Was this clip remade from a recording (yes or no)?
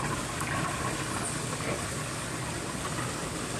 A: no